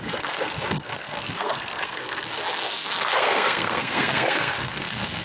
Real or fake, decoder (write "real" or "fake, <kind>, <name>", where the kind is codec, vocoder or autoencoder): fake, codec, SNAC